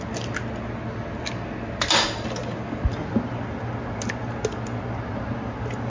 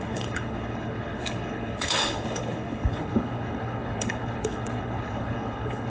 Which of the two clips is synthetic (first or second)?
second